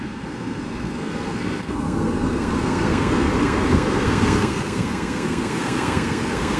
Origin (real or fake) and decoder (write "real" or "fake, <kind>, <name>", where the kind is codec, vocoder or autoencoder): fake, codec, SNAC